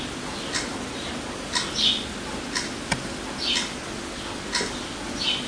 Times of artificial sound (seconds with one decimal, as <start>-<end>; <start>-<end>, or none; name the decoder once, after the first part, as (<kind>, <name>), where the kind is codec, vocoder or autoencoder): none